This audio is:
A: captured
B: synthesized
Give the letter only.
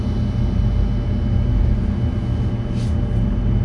A